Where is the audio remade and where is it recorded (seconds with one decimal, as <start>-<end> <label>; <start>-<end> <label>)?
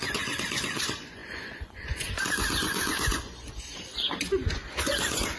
0.0-5.4 remade